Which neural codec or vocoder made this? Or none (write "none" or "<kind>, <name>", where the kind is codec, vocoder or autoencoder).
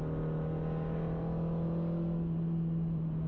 none